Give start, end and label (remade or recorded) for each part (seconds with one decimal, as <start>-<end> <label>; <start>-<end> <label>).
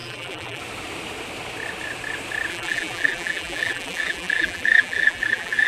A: 0.0-0.6 remade; 0.6-2.5 recorded; 2.5-5.7 remade